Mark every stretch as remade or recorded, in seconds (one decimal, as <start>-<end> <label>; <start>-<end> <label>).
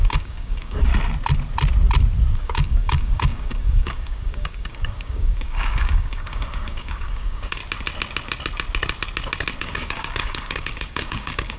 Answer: 0.0-0.9 remade; 0.9-2.3 recorded; 2.3-7.6 remade; 7.6-9.6 recorded; 9.6-11.6 remade